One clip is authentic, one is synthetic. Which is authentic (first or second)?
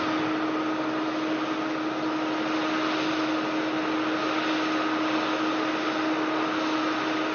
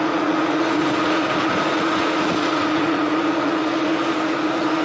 first